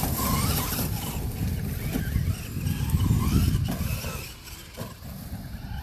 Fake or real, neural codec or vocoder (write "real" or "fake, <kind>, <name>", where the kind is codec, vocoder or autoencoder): real